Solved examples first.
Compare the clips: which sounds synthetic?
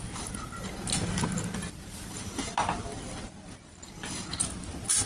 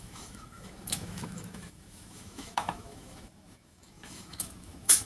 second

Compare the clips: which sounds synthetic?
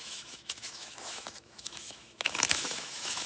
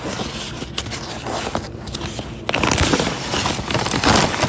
first